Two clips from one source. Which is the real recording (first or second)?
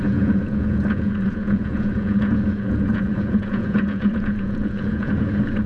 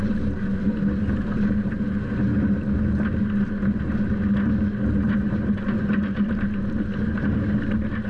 second